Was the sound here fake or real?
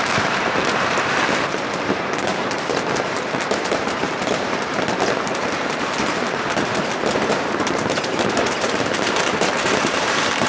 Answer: fake